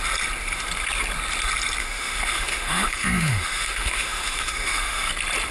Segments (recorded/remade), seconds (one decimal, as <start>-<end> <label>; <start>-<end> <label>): 0.0-1.8 recorded; 1.8-5.1 remade; 5.1-5.5 recorded